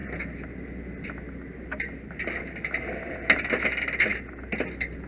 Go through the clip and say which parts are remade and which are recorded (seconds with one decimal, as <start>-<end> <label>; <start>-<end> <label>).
0.0-5.1 recorded